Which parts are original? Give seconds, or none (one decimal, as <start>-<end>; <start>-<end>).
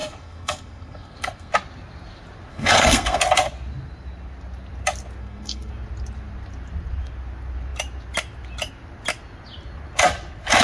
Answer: 1.5-2.5; 3.2-5.2; 5.7-10.6